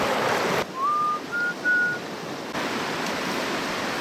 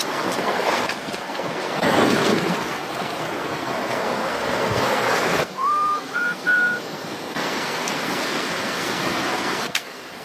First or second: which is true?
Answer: first